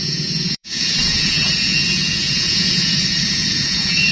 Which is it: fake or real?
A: fake